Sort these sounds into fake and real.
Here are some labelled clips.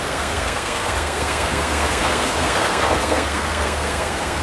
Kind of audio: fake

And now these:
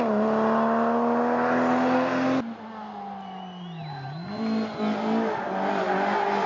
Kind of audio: real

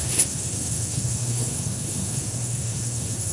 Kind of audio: fake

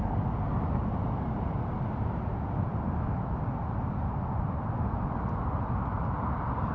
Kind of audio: real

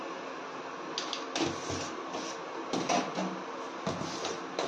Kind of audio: real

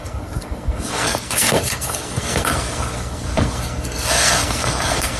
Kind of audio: fake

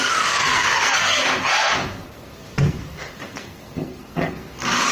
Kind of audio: fake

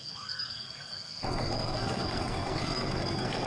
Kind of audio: fake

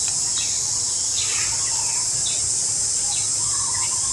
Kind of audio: real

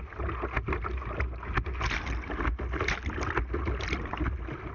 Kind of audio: real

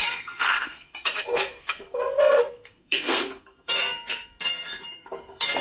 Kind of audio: fake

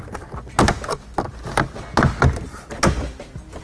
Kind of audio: real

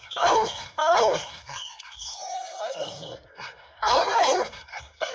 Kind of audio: fake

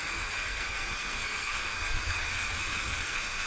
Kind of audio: fake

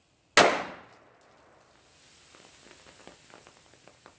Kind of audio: real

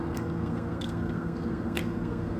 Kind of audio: fake